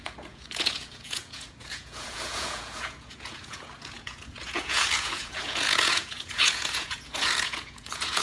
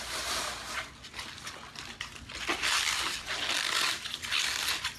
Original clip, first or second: second